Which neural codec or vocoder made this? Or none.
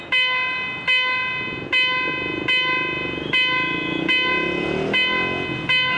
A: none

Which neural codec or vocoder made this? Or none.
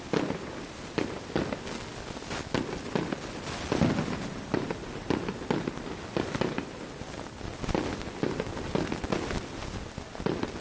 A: none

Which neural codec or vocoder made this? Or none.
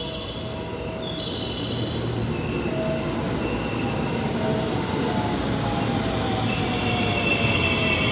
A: none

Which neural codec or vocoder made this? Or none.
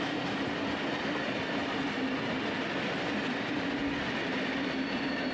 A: none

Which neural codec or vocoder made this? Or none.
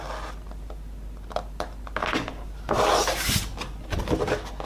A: none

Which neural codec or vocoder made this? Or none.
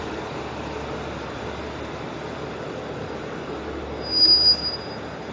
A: none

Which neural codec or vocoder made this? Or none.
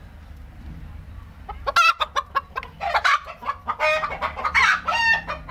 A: none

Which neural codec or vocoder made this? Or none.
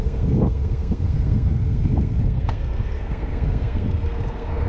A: codec, SNAC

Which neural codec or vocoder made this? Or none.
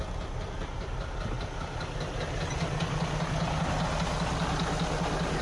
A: none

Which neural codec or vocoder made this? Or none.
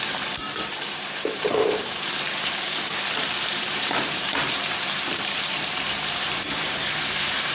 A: vocoder, BigVGAN v2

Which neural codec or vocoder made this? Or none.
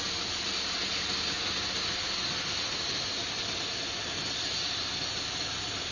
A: none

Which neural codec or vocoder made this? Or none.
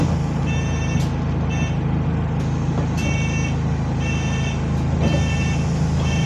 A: none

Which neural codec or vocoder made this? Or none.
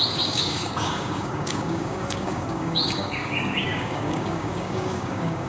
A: codec, DAC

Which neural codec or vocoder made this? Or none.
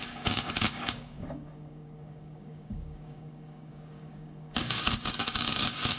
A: codec, DAC